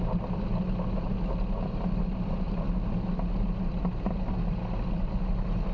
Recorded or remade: recorded